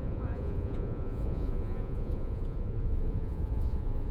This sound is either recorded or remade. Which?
remade